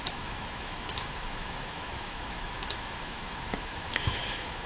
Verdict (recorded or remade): remade